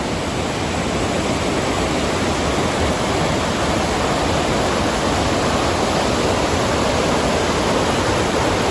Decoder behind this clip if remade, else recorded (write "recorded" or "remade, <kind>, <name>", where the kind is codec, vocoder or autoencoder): recorded